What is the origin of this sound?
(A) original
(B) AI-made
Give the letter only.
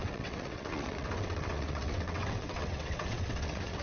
B